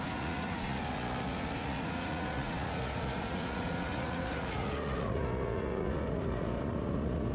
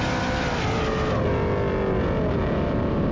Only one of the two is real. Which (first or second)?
second